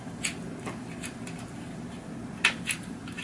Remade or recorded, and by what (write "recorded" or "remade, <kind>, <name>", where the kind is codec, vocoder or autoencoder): recorded